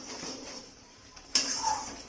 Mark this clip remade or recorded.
remade